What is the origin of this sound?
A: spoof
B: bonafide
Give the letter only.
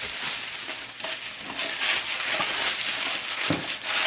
B